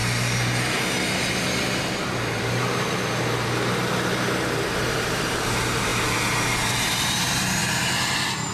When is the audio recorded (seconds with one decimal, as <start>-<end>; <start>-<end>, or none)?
0.0-4.7; 5.9-6.7; 7.6-8.5